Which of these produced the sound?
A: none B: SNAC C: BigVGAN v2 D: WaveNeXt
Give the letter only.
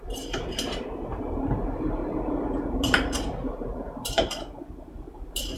C